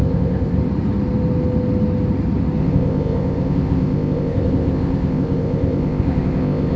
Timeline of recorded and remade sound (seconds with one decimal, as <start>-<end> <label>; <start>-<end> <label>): 0.0-0.6 remade; 0.6-2.6 recorded; 2.6-6.8 remade